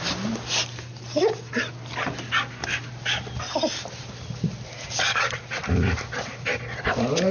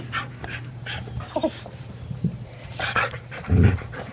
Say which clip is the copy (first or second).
second